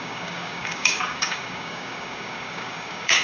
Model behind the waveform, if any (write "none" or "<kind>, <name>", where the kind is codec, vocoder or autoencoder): codec, DAC